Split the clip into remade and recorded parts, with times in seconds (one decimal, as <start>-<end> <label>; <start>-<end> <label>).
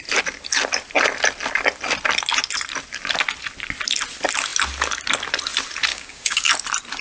0.0-5.9 recorded; 5.9-6.5 remade; 6.5-7.0 recorded